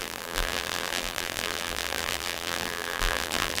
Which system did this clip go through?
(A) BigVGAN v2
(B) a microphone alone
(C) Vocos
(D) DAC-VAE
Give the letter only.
A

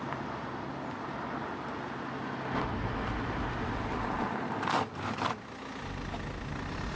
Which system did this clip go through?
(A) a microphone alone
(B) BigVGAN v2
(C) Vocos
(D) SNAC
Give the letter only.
A